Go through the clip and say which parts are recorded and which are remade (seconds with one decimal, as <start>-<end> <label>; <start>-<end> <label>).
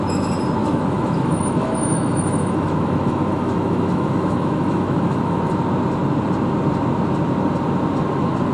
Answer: 0.0-0.6 recorded; 0.6-5.4 remade; 5.4-8.5 recorded